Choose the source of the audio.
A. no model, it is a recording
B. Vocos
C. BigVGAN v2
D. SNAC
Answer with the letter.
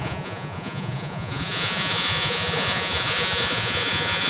B